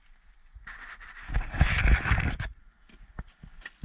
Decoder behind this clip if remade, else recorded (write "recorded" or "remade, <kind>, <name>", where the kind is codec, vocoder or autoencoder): recorded